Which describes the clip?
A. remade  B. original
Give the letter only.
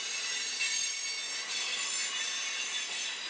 B